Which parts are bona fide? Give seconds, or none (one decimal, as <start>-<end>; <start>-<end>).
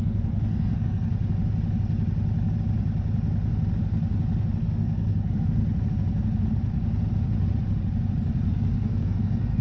1.1-4.6; 5.6-8.5